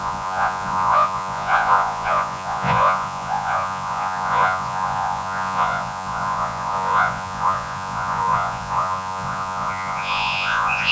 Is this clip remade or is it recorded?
remade